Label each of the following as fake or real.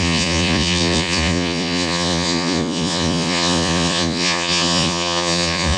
fake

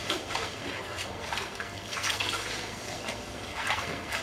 fake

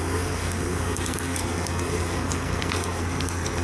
fake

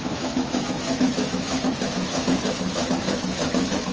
fake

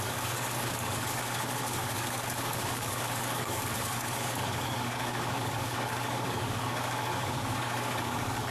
fake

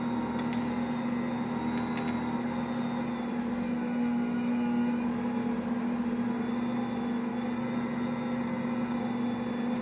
real